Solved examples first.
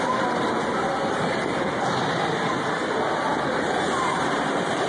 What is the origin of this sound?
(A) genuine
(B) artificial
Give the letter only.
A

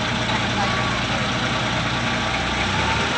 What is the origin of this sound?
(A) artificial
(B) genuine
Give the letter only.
B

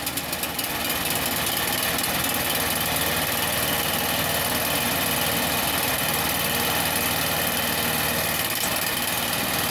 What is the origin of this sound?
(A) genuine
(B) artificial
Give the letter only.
A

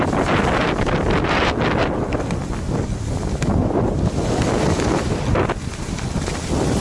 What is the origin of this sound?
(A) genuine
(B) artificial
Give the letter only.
A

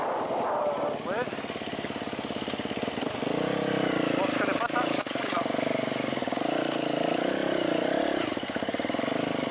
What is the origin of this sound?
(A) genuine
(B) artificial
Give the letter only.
A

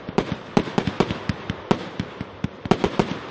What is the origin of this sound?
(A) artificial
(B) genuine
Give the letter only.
A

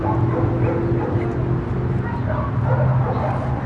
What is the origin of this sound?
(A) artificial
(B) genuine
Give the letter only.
B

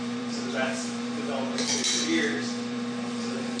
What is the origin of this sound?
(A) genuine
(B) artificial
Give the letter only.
B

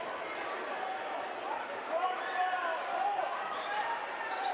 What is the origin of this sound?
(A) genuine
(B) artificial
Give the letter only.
B